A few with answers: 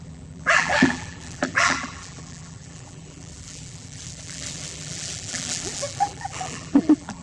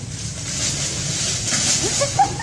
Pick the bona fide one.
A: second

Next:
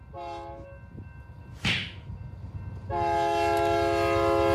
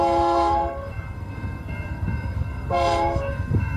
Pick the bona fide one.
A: first